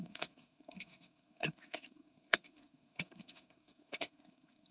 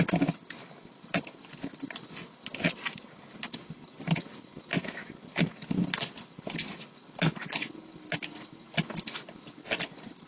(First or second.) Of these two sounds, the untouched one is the second